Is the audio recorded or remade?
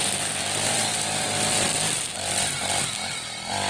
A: remade